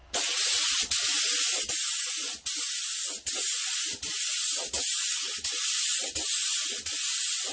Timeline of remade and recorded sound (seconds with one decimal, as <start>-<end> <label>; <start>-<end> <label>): 0.0-7.5 recorded